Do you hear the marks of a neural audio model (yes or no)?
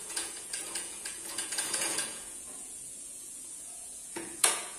yes